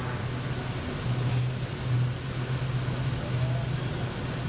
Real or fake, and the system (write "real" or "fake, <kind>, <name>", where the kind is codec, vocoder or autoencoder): real